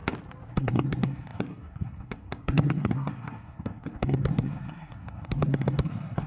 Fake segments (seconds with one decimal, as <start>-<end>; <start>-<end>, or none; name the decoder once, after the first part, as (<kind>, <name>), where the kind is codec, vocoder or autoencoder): 0.5-6.3 (codec, SNAC)